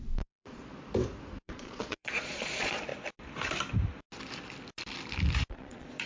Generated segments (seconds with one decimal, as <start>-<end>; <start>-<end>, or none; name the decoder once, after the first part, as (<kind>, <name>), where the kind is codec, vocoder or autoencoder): 0.0-0.6 (vocoder, Vocos); 1.4-2.9; 5.5-6.1